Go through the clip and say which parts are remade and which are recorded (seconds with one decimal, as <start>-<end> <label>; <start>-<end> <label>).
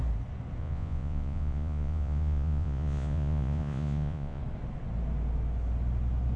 0.0-0.6 recorded; 0.6-4.4 remade; 4.4-6.4 recorded